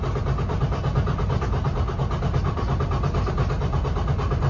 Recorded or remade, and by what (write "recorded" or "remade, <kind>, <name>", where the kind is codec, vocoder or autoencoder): recorded